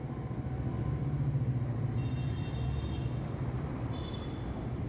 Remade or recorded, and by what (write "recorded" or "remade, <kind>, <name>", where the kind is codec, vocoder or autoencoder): recorded